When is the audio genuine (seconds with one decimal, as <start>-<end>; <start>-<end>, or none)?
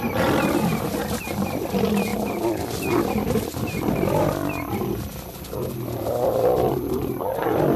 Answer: 0.0-7.8